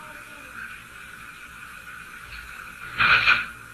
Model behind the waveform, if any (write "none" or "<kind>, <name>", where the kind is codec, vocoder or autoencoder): none